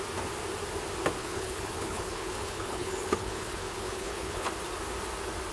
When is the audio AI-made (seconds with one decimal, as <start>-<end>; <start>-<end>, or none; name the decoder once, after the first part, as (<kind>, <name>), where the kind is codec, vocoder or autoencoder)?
1.2-4.5 (codec, HILCodec)

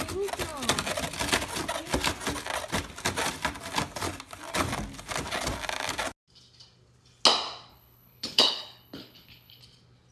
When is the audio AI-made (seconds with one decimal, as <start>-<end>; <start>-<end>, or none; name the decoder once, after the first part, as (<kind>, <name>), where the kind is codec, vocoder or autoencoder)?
7.7-9.6 (codec, HILCodec)

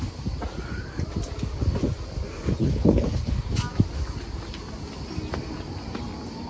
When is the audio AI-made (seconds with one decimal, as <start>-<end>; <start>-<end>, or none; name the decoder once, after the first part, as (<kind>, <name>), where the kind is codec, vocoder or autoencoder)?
2.6-3.4 (codec, HILCodec)

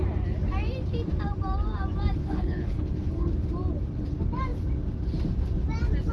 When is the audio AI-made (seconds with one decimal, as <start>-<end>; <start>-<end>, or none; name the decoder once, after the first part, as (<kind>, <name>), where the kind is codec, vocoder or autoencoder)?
2.2-3.3 (codec, HILCodec)

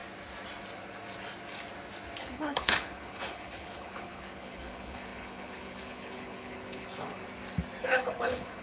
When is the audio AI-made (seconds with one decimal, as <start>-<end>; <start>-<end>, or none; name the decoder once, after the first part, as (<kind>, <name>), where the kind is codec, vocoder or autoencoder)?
2.2-7.2 (codec, HILCodec); 7.8-8.6

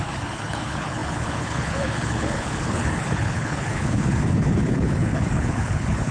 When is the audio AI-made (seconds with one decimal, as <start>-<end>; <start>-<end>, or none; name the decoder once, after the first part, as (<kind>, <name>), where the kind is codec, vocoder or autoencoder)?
0.0-6.1 (codec, HILCodec)